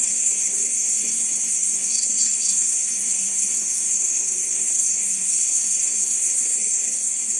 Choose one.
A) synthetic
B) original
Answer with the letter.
A